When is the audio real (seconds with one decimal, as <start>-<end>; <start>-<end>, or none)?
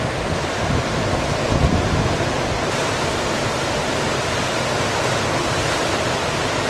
none